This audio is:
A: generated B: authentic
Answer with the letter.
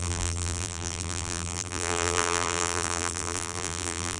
A